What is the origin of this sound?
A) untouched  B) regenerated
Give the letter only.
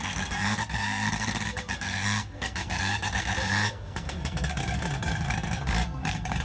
B